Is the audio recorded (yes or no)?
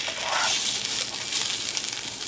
no